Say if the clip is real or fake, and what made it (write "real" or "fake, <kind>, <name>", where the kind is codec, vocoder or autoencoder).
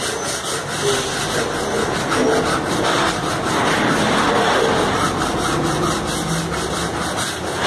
real